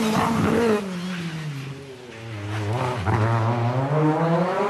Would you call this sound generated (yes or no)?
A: no